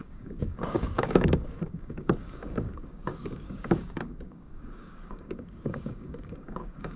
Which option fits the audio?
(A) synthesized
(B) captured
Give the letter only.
A